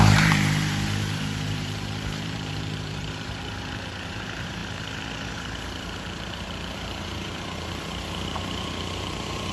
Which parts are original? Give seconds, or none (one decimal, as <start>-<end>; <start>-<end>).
4.6-5.4